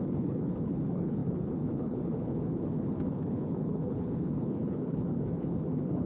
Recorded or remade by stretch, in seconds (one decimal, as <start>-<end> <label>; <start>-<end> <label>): 0.0-6.1 remade